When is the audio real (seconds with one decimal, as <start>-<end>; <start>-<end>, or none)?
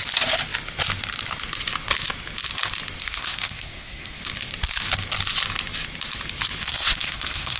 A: 0.0-3.0; 4.2-6.6